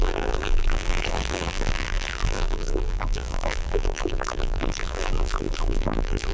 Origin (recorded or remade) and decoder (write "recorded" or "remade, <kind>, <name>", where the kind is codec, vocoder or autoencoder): remade, vocoder, BigVGAN v2